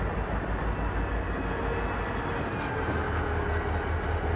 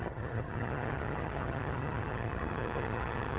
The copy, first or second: second